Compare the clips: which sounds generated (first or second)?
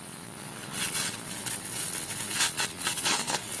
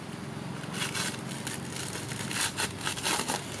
first